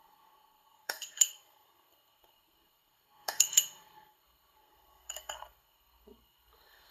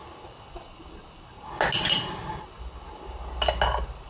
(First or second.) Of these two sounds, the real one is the second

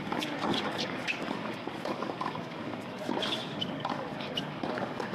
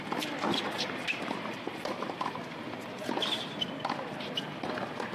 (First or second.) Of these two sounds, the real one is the second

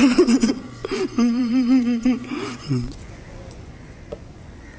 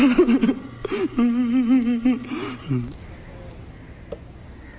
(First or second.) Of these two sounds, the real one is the second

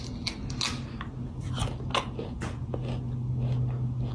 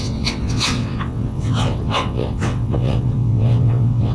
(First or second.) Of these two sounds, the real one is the first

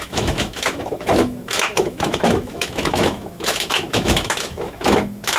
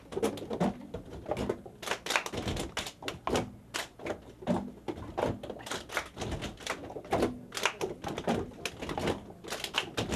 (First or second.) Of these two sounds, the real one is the second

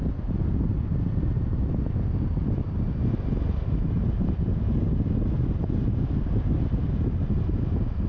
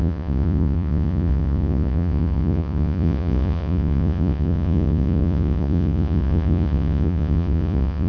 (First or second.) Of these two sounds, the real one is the first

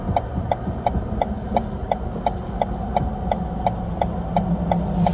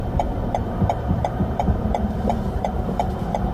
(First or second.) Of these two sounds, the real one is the first